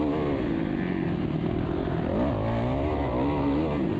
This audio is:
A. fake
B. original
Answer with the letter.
B